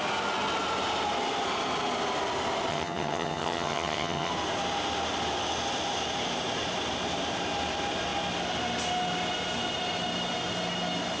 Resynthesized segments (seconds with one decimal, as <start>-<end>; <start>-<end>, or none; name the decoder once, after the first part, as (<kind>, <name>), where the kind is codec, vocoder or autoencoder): 2.7-4.3 (vocoder, HiFi-GAN)